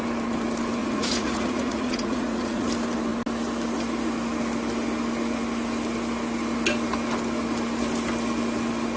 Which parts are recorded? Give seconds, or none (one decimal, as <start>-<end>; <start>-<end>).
0.0-0.8; 2.7-9.0